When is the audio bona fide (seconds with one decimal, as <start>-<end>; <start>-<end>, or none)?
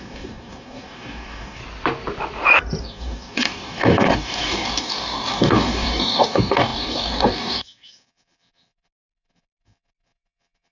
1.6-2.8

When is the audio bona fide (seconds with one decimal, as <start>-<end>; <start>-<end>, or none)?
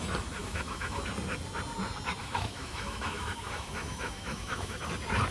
0.0-0.4; 1.0-2.2; 4.8-5.3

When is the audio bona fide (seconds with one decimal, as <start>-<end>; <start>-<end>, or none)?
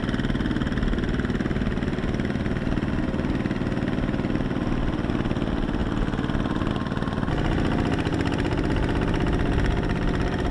0.0-10.5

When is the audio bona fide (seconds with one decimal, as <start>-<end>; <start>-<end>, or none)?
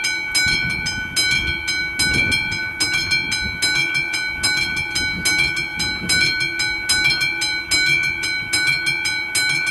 0.0-9.7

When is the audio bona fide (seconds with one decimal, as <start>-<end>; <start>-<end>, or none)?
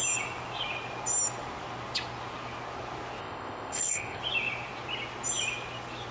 0.0-3.2; 4.2-6.1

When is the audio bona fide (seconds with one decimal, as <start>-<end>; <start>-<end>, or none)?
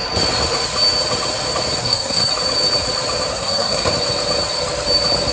0.0-1.8; 2.3-3.3; 3.9-5.3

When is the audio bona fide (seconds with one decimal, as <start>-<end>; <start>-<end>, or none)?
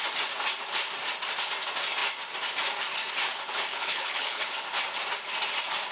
0.0-3.7; 4.4-5.9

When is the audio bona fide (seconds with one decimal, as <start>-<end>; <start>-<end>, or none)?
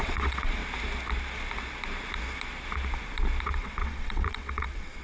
0.6-3.4